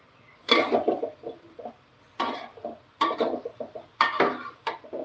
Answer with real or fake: real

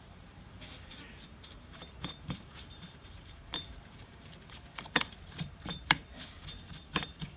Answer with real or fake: fake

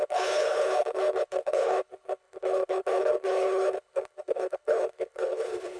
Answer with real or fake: fake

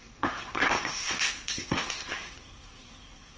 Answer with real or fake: fake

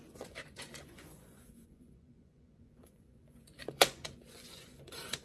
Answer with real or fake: fake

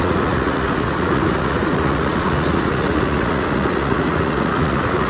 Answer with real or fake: fake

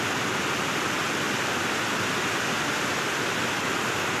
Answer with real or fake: real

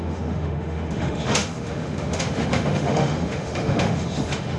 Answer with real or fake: fake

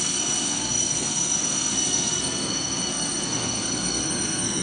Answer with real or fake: fake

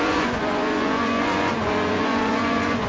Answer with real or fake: fake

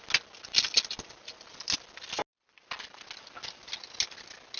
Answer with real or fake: real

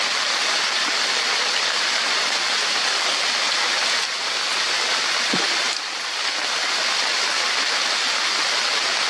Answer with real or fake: real